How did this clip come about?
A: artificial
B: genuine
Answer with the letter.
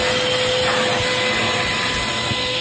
B